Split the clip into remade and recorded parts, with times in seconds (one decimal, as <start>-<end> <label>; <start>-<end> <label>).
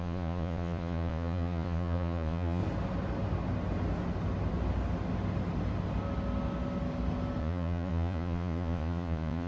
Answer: 0.0-2.6 remade; 2.6-7.4 recorded; 7.4-9.5 remade